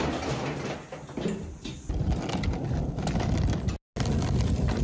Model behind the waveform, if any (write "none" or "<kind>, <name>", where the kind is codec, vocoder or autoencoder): none